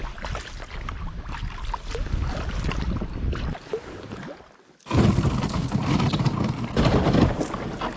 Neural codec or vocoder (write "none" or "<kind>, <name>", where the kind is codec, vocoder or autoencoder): none